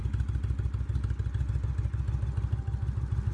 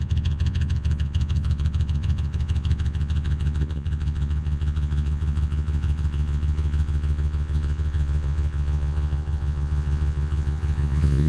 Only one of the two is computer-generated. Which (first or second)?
second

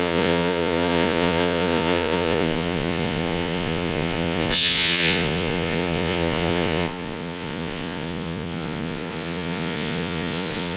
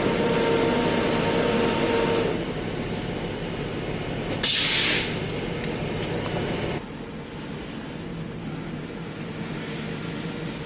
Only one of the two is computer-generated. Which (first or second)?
first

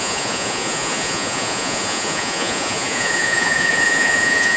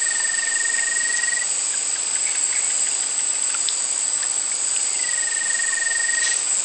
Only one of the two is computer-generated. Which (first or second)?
first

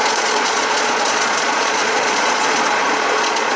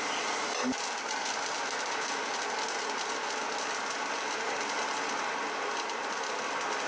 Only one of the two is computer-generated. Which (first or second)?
first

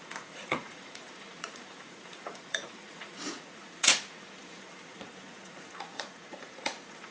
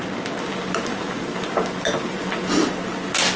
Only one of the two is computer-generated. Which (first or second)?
first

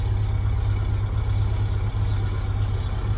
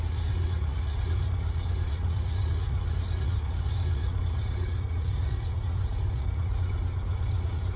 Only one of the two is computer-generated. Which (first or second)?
second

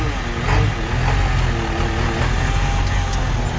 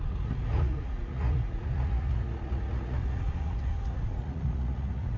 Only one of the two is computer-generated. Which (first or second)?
second